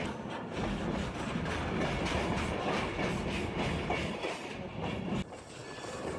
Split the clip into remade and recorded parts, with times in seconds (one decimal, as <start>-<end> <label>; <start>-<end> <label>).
0.0-6.2 recorded